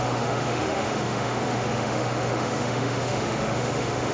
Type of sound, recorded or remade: remade